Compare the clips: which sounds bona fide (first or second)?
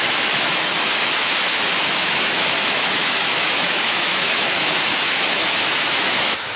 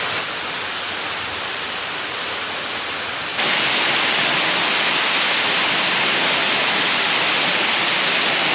second